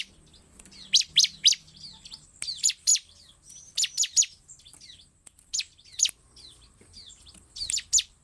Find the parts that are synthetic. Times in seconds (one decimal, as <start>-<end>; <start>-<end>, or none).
none